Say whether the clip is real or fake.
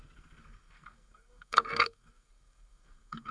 fake